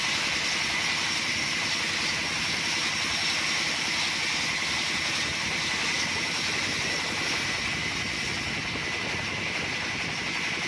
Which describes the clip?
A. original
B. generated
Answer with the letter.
A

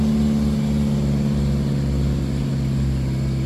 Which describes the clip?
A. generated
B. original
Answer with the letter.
B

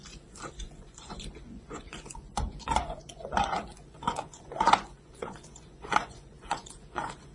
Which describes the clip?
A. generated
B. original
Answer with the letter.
A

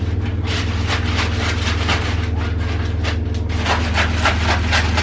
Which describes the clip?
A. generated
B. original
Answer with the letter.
B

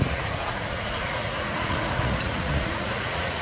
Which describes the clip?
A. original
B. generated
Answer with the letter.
B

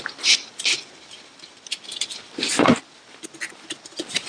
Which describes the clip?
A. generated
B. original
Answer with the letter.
B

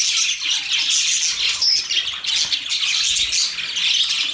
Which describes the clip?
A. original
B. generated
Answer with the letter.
A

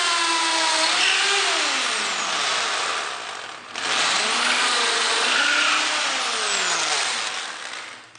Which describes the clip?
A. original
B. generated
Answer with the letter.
A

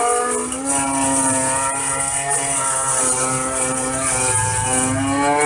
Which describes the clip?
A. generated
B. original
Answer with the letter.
B